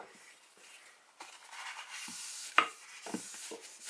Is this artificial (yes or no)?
no